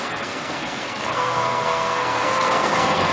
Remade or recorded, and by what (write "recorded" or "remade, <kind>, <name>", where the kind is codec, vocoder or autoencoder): remade, codec, SNAC